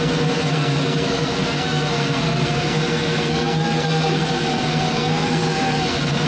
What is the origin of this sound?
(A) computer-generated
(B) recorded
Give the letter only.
A